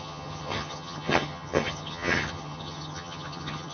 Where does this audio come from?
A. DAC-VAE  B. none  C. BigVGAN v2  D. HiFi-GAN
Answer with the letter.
D